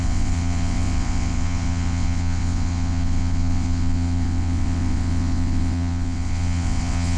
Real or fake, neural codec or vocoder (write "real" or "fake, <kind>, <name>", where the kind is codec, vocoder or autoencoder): fake, vocoder, WaveNeXt